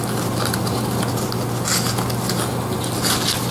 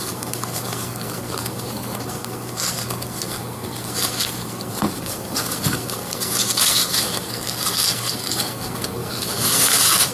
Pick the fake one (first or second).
second